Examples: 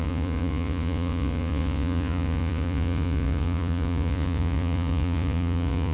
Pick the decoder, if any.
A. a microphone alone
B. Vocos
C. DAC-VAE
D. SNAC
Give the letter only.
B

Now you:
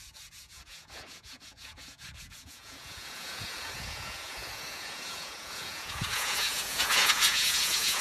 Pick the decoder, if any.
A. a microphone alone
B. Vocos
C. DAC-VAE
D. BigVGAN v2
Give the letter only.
B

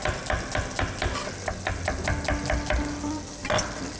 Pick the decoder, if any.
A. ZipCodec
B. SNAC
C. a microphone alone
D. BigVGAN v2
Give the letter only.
C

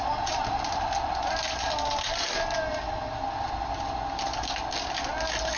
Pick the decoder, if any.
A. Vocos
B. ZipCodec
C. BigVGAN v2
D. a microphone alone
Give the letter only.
D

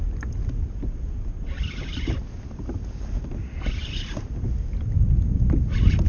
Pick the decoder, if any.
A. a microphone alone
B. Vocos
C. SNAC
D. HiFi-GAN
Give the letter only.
A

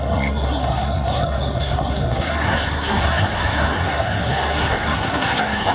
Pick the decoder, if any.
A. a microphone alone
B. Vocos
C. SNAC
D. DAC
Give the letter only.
C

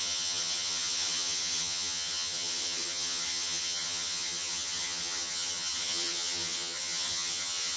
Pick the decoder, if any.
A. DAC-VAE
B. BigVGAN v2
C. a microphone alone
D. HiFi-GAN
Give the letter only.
D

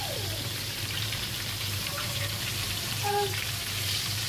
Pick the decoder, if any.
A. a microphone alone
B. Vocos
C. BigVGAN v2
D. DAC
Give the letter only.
C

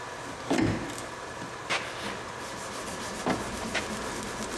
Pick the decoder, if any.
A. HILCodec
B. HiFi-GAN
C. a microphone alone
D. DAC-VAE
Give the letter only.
C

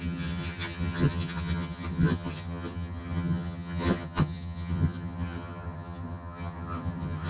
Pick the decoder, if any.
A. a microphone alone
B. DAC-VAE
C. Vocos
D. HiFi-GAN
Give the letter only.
D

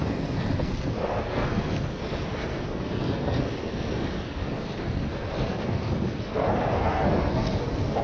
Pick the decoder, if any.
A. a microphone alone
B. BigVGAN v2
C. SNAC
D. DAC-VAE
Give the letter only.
C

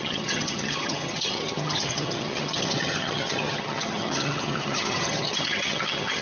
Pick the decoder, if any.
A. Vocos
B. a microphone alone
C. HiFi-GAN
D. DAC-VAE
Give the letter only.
C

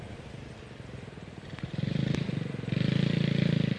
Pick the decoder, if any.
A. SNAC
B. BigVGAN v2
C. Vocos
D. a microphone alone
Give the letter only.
D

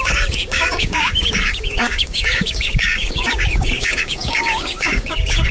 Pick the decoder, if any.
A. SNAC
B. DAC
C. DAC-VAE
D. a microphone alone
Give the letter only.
B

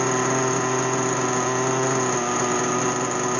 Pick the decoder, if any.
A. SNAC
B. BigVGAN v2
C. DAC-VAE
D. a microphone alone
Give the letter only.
D